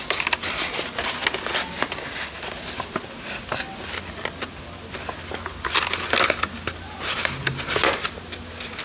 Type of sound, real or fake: real